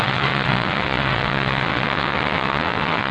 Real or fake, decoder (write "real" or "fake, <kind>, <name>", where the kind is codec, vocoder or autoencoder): fake, vocoder, WaveNeXt